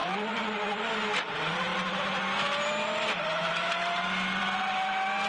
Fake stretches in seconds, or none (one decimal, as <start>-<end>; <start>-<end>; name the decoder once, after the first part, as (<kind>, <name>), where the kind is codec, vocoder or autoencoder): none

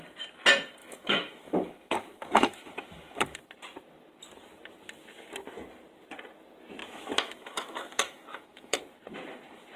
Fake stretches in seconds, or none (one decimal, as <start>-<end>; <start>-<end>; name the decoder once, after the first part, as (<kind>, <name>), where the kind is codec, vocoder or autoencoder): 0.8-3.4 (autoencoder, DAC-VAE); 6.8-8.8

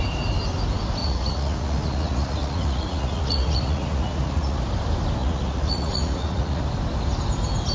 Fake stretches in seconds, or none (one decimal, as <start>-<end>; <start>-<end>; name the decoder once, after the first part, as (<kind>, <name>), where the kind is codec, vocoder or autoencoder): 1.0-4.6 (vocoder, Vocos); 5.2-6.6

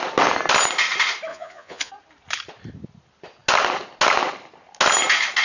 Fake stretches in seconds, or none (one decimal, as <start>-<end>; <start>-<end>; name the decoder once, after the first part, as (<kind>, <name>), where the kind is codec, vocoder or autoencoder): 1.3-1.9 (vocoder, Vocos)

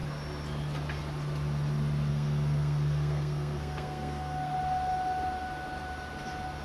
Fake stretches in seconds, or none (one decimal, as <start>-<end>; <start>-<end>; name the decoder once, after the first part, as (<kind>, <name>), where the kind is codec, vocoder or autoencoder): 2.1-4.5 (codec, SNAC)

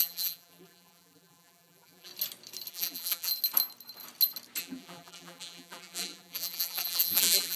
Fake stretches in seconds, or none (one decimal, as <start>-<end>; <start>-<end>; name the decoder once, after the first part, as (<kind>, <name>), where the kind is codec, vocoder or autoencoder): 0.0-2.1 (vocoder, BigVGAN v2); 2.7-3.3; 4.6-7.6